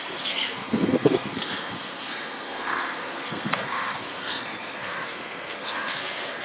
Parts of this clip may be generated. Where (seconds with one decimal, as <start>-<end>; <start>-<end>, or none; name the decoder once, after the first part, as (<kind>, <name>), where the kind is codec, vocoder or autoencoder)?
0.0-6.4 (codec, SNAC)